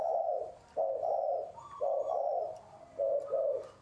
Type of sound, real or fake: real